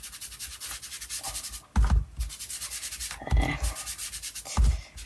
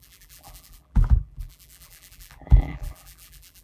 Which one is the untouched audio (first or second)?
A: first